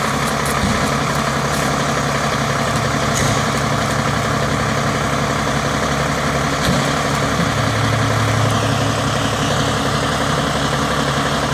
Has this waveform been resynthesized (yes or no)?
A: no